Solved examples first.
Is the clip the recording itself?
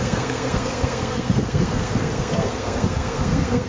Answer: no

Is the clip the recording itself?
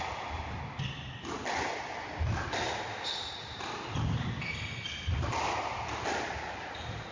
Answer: yes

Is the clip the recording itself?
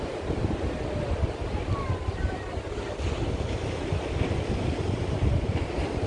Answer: yes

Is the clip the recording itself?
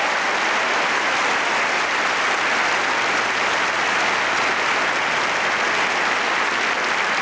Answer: yes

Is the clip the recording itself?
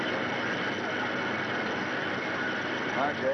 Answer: yes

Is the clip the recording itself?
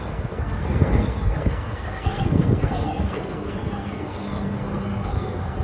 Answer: no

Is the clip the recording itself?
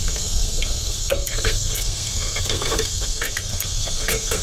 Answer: no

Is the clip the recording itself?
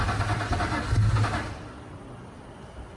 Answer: yes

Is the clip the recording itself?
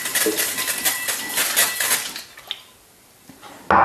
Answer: yes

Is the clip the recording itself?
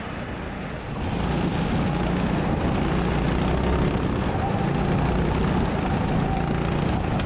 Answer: yes